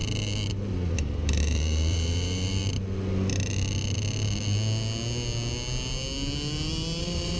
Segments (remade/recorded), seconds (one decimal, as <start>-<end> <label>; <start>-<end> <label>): 0.0-0.7 recorded; 0.7-2.6 remade; 2.6-7.0 recorded; 7.0-7.4 remade